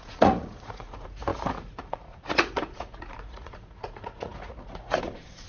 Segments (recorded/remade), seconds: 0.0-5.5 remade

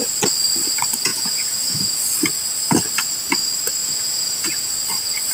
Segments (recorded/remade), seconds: 0.0-1.1 recorded; 1.1-2.0 remade; 2.0-3.8 recorded; 3.8-4.7 remade; 4.7-5.3 recorded

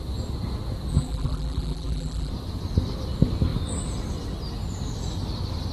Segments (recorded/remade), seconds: 0.0-0.9 recorded; 0.9-2.3 remade; 2.3-5.7 recorded

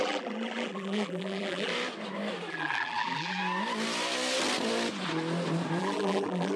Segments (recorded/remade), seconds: 0.0-1.7 remade; 1.7-2.5 recorded; 2.5-3.4 remade; 3.4-5.8 recorded; 5.8-6.6 remade

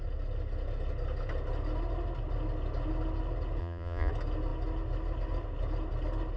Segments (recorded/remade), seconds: 0.0-3.6 recorded; 3.6-4.1 remade; 4.1-6.4 recorded

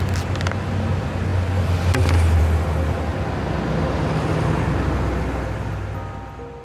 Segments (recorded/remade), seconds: 0.0-6.6 recorded

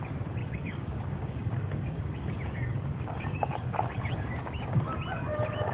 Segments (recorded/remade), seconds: 0.0-0.4 recorded; 0.4-2.4 remade; 2.4-3.3 recorded; 3.3-4.8 remade; 4.8-5.7 recorded

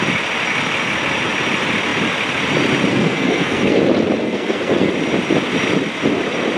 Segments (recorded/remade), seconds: 0.0-2.9 recorded; 2.9-3.8 remade; 3.8-4.2 recorded; 4.2-4.9 remade; 4.9-6.6 recorded